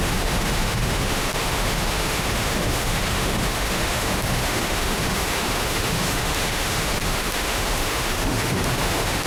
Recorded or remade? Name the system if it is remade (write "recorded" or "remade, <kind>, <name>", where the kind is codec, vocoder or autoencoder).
remade, autoencoder, DAC-VAE